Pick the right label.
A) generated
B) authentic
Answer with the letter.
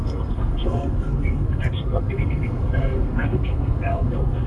A